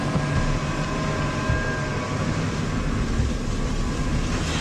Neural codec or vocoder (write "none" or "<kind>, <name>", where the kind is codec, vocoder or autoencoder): none